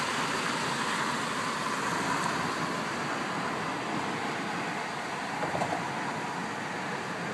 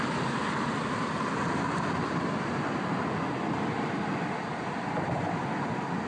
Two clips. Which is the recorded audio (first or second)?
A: first